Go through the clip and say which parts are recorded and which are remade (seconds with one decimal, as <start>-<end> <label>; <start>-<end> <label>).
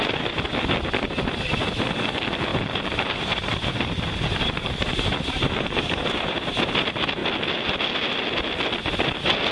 0.0-2.5 recorded; 2.5-6.6 remade; 6.6-9.5 recorded